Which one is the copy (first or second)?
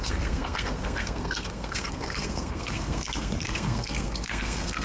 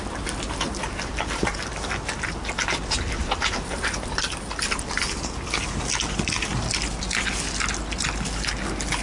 first